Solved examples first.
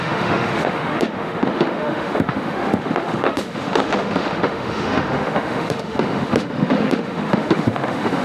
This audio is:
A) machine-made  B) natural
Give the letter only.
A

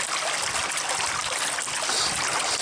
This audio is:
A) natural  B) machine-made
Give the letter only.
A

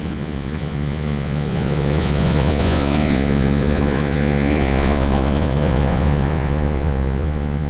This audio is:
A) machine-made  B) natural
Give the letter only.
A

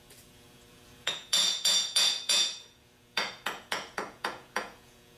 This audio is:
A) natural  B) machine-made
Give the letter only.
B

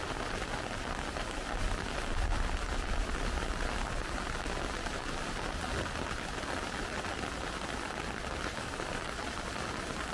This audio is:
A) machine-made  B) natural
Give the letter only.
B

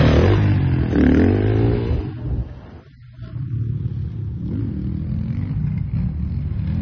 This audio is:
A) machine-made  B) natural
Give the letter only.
B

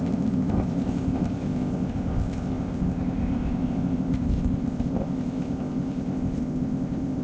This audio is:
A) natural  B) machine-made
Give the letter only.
B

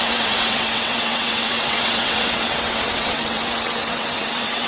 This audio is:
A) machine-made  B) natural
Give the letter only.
A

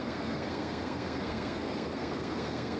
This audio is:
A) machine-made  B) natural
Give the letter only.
A